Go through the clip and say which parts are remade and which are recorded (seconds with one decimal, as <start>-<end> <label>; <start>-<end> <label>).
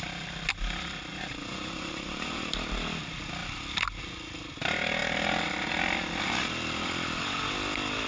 0.0-1.1 recorded; 1.1-2.5 remade; 2.5-8.1 recorded